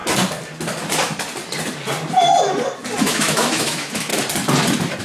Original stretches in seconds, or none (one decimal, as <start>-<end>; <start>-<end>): 0.0-3.0; 4.1-5.0